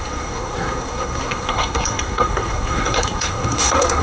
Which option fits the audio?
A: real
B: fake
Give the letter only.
B